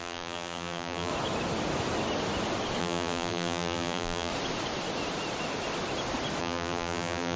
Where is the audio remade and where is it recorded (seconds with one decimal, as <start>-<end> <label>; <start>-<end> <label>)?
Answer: 0.0-1.1 remade; 1.1-2.8 recorded; 2.8-4.3 remade; 4.3-6.4 recorded; 6.4-7.4 remade